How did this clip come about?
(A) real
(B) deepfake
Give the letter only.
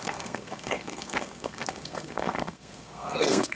B